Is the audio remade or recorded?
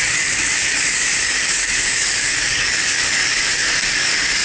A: remade